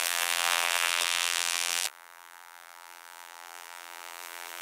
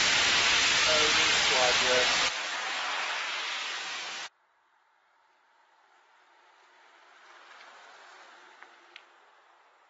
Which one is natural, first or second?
second